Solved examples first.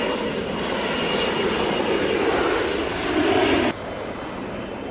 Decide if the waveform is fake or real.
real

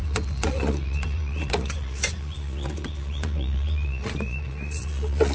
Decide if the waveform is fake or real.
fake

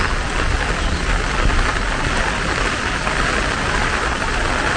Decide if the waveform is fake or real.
real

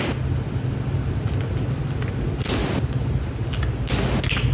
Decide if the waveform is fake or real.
real